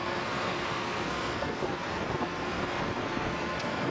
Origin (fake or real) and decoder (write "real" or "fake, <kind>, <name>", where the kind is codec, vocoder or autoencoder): fake, codec, SNAC